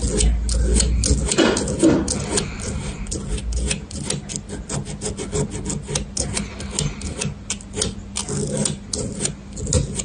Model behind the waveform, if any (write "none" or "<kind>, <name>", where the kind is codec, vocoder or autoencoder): none